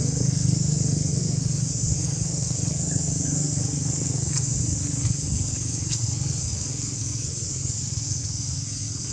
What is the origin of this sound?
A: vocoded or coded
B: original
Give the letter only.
A